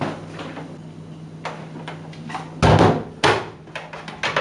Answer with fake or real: real